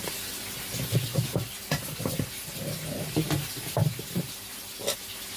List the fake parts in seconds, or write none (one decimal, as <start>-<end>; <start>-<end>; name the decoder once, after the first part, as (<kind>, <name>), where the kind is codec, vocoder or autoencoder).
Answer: 1.1-4.3 (vocoder, BigVGAN v2)